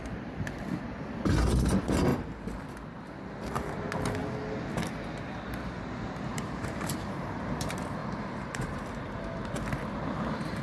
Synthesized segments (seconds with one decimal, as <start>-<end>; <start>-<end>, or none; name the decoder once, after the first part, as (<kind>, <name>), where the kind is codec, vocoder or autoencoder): 2.1-3.8 (vocoder, BigVGAN v2); 6.3-7.4; 8.0-9.0